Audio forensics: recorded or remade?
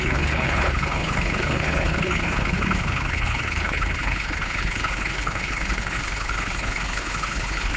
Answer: remade